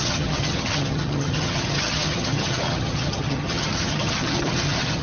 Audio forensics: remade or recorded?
remade